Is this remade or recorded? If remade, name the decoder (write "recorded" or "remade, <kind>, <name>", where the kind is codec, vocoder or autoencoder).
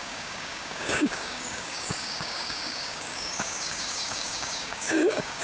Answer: remade, codec, DAC